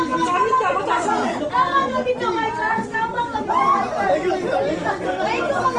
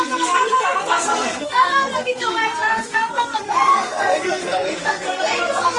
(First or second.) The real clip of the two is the first